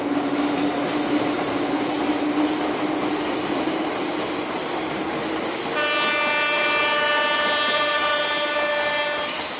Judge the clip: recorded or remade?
recorded